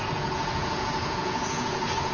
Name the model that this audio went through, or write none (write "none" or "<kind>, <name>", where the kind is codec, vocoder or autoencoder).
vocoder, Vocos